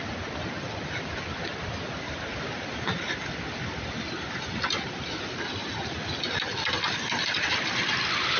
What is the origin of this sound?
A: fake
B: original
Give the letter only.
B